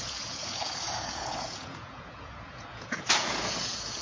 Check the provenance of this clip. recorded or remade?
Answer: remade